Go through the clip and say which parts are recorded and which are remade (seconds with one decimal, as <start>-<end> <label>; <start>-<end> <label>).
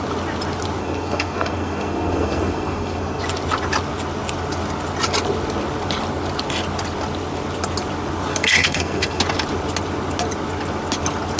0.0-0.8 recorded; 0.8-3.2 remade; 3.2-8.3 recorded; 8.3-9.2 remade; 9.2-11.4 recorded